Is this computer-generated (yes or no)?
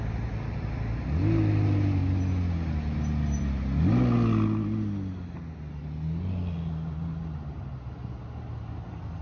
no